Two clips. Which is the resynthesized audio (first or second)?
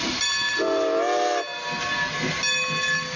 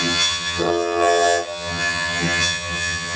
second